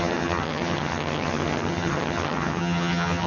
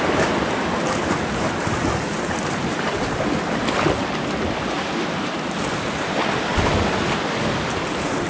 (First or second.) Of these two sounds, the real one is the second